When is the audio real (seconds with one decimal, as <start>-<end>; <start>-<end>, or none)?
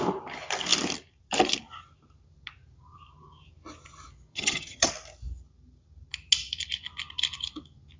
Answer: 0.0-4.3; 4.9-8.0